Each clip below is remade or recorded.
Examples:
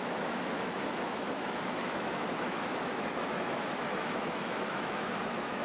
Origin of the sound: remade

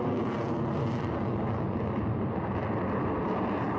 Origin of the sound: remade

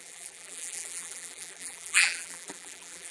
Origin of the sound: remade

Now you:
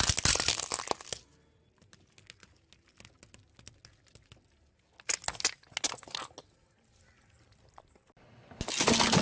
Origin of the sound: recorded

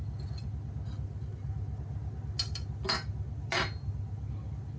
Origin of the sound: recorded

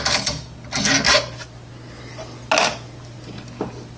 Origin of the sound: recorded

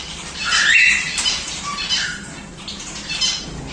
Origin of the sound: recorded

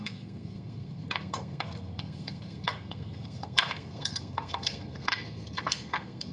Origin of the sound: remade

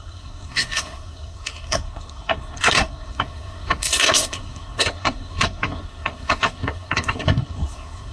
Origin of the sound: remade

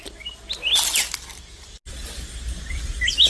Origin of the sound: recorded